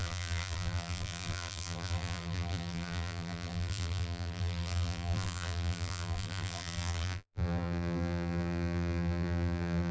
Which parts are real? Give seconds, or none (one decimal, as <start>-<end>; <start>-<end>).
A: none